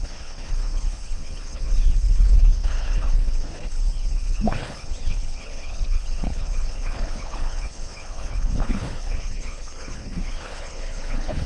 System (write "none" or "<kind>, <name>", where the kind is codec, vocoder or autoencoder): codec, HILCodec